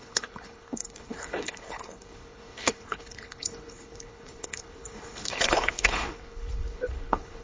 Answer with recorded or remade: remade